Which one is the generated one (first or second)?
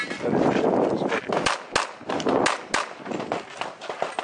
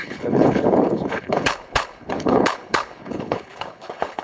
second